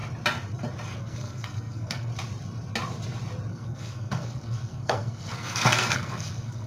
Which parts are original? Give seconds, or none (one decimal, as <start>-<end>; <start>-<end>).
0.0-1.0; 2.1-3.5